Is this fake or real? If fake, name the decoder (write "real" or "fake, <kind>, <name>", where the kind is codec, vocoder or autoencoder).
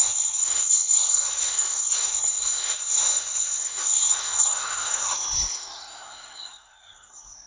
fake, codec, SNAC